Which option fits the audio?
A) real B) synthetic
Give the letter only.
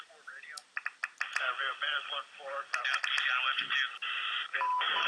A